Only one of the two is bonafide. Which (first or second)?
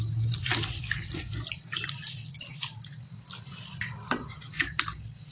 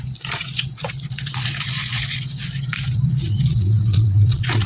first